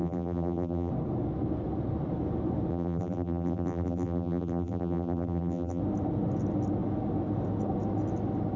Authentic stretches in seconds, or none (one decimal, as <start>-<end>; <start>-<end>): 0.9-2.7; 5.8-8.6